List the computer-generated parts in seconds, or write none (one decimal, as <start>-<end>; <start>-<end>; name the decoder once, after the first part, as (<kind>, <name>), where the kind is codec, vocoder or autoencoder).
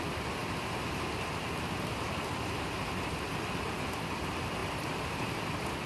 none